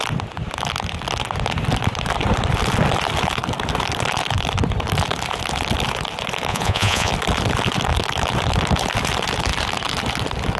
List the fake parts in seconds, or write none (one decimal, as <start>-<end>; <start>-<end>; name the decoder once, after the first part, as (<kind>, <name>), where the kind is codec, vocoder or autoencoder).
6.5-7.1 (vocoder, Vocos)